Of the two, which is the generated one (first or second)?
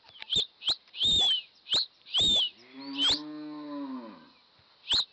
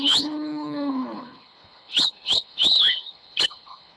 second